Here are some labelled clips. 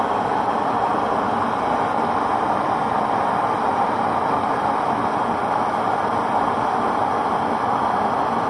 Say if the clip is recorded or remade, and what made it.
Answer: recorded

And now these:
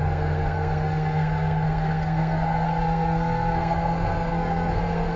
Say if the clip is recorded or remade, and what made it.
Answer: remade, codec, SNAC